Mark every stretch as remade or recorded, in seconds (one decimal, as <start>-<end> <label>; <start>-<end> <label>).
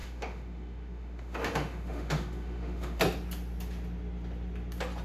0.0-3.0 remade; 3.0-5.0 recorded